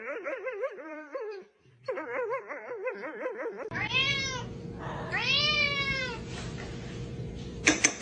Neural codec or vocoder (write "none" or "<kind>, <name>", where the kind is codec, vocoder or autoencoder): vocoder, BigVGAN v2